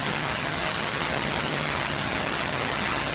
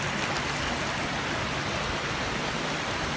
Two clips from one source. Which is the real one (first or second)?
second